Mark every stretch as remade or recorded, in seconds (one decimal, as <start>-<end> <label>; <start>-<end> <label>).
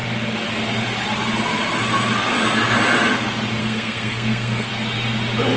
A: 0.0-3.6 recorded; 3.6-4.7 remade; 4.7-5.6 recorded